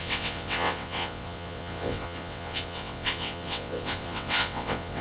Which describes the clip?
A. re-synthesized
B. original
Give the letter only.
A